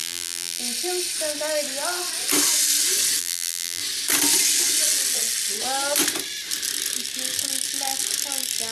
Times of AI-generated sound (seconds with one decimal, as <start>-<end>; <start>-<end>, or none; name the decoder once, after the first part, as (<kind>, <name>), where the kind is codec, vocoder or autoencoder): 0.0-0.6 (vocoder, BigVGAN v2); 3.2-3.8

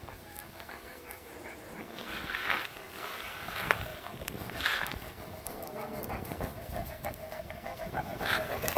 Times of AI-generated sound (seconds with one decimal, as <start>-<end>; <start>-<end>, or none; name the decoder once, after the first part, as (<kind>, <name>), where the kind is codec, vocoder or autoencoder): 0.0-1.3 (codec, SNAC); 1.8-8.8

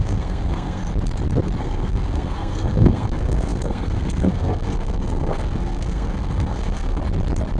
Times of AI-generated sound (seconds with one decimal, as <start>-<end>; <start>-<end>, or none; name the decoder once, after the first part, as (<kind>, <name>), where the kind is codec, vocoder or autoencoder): 0.0-0.8 (codec, SNAC); 1.6-7.0

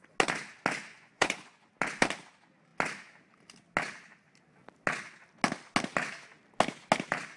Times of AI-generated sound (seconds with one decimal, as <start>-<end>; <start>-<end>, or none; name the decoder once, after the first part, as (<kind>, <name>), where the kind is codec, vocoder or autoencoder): 0.9-1.7 (vocoder, Vocos)

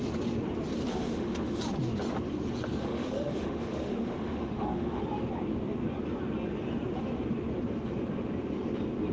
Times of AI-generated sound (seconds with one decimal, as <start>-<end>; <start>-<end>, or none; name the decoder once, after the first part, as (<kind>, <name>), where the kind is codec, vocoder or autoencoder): 0.9-1.6 (autoencoder, DAC-VAE); 2.8-5.0

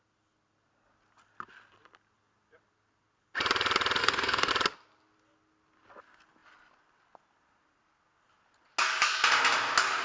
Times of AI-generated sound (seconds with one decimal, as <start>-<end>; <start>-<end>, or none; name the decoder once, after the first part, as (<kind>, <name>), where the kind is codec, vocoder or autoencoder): 4.0-4.5 (codec, SNAC)